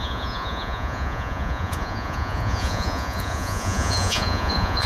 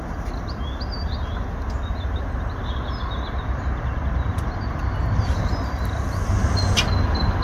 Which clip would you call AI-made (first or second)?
first